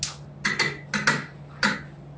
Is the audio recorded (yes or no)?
yes